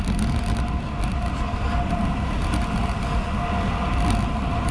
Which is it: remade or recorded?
recorded